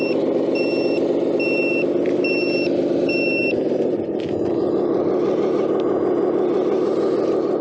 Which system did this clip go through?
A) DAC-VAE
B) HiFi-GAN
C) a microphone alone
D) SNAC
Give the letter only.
C